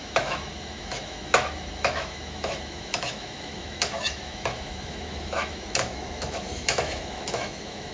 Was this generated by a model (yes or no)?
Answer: yes